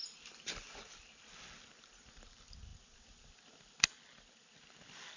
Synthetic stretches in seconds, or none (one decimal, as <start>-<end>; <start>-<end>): none